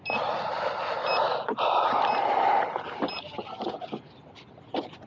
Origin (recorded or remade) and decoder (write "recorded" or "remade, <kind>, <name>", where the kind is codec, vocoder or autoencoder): recorded